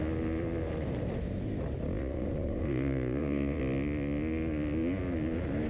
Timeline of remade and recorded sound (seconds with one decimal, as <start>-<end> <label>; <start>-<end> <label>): 0.0-2.0 recorded; 2.0-3.6 remade; 3.6-5.7 recorded